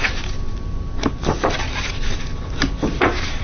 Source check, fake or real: real